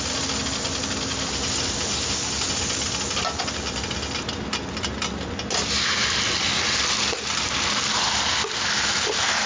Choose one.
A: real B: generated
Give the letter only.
A